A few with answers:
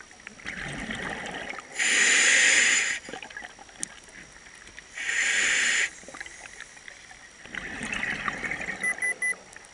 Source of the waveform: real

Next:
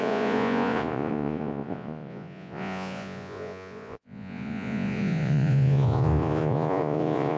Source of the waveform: fake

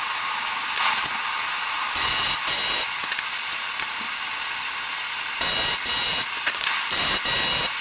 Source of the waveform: real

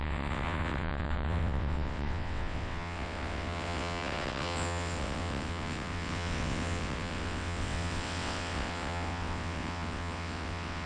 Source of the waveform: fake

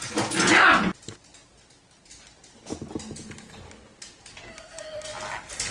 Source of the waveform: real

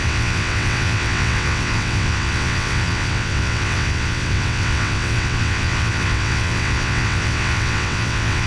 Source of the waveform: fake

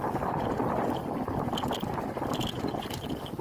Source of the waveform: fake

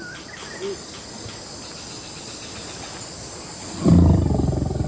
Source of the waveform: real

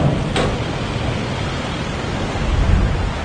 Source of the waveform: real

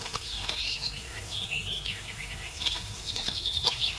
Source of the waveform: fake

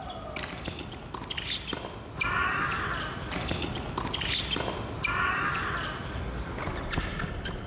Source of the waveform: real